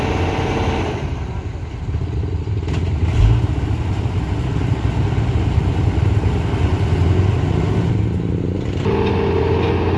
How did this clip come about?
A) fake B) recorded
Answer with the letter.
B